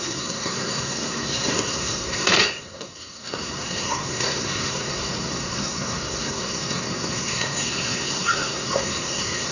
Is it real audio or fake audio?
fake